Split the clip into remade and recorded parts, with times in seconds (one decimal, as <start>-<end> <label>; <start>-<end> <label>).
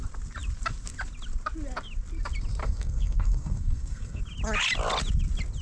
0.0-2.6 recorded; 2.6-4.2 remade; 4.2-5.6 recorded